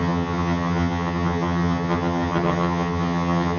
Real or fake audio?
fake